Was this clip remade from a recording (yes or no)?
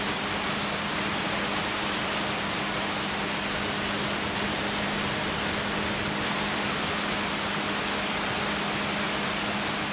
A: no